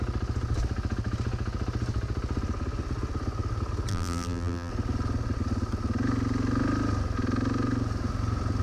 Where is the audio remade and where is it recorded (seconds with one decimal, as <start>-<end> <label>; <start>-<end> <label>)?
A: 0.0-3.9 recorded; 3.9-4.7 remade; 4.7-8.6 recorded